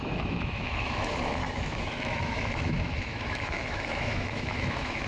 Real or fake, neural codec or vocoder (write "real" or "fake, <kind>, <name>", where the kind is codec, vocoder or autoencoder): fake, autoencoder, DAC-VAE